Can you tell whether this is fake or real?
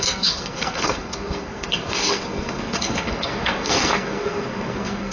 fake